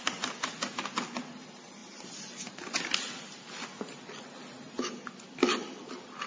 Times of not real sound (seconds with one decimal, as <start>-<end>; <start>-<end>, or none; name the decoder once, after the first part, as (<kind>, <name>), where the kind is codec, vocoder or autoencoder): none